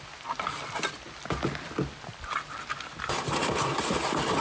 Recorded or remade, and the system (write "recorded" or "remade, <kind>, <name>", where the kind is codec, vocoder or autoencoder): recorded